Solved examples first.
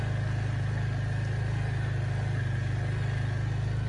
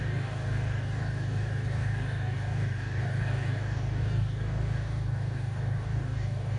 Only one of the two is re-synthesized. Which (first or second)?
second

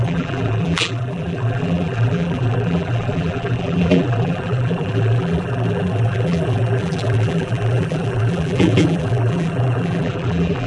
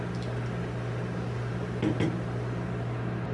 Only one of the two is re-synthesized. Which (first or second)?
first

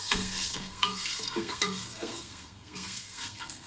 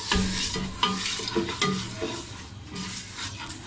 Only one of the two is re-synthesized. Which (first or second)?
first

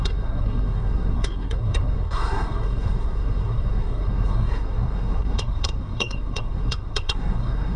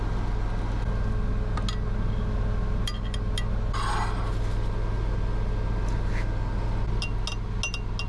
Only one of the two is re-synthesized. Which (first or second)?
first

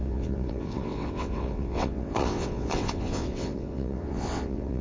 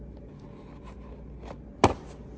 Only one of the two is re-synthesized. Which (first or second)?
first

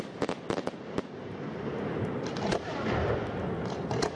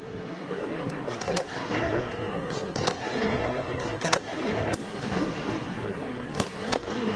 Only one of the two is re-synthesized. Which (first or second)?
second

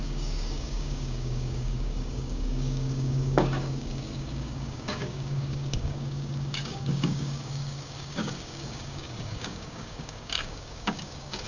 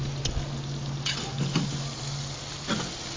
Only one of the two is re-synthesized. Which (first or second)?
first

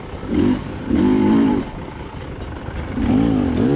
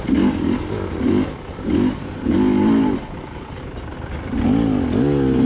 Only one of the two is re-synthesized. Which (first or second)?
first